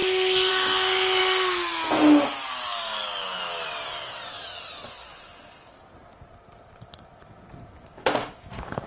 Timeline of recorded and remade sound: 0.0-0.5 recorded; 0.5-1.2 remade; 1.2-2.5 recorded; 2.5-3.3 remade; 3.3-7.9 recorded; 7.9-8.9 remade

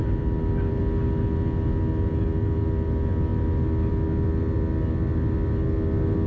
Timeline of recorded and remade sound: 0.0-0.8 remade; 0.8-6.3 recorded

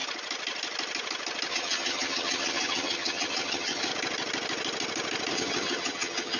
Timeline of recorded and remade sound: 0.0-1.5 recorded; 1.5-3.9 remade; 3.9-5.3 recorded; 5.3-6.4 remade

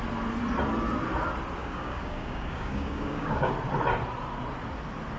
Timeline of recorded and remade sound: 0.0-1.6 recorded; 1.6-3.5 remade; 3.5-5.2 recorded

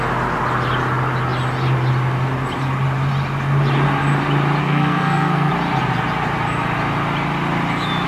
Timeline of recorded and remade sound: 0.0-4.6 recorded; 4.6-5.5 remade; 5.5-8.1 recorded